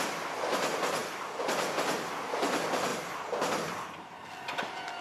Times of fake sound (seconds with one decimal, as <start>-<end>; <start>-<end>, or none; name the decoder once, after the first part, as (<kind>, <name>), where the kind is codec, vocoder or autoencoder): 1.0-1.7 (vocoder, BigVGAN v2)